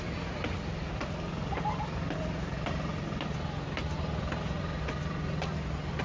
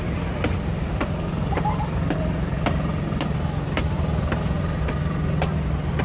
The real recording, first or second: first